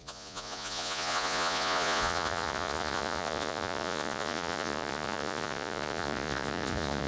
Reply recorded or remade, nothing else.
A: remade